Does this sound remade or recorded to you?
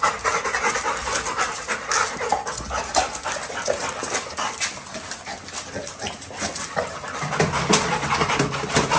recorded